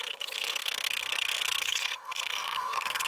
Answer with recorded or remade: remade